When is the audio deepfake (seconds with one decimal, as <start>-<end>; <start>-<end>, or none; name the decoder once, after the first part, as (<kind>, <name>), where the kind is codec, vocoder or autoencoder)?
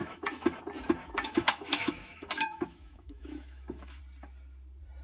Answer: 0.0-0.6 (autoencoder, DAC-VAE); 1.0-4.0